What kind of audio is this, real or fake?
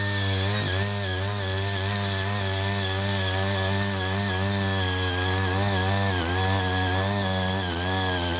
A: real